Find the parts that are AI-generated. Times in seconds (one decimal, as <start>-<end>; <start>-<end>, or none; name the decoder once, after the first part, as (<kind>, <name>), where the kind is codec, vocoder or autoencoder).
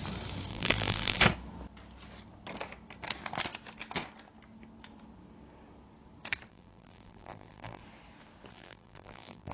0.5-1.2 (vocoder, BigVGAN v2); 6.5-7.8; 8.5-9.5